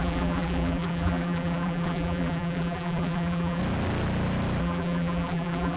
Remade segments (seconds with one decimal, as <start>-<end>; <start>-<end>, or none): 0.0-3.6; 4.6-5.8